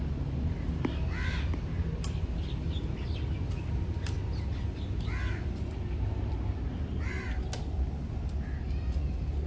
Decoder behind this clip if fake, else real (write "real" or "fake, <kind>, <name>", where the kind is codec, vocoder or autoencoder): real